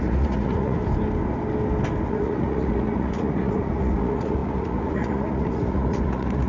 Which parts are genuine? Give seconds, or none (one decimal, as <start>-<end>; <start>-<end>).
0.8-2.1